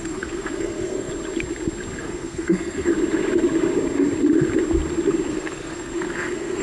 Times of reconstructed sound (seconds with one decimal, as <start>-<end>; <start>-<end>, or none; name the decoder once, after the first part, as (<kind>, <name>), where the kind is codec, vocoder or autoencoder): 0.0-1.1 (codec, SNAC); 2.0-2.9; 5.3-6.6